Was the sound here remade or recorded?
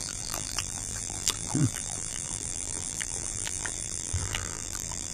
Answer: remade